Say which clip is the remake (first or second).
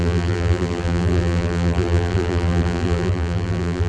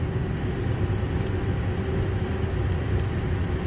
first